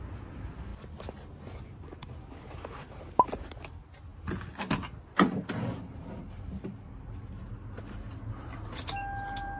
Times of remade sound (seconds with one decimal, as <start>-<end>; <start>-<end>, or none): none